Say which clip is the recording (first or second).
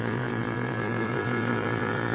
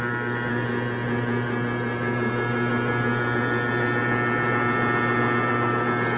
second